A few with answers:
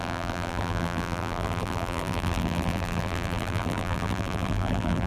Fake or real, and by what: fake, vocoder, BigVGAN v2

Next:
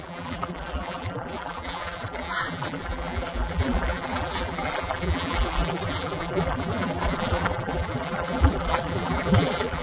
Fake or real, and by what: fake, vocoder, BigVGAN v2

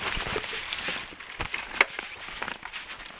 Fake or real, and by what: real